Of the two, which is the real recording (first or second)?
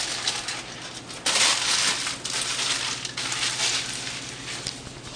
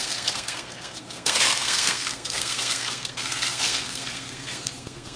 first